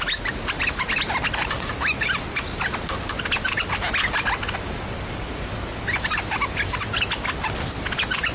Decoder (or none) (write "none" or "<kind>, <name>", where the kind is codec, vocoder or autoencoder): none